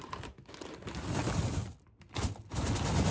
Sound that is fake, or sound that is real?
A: real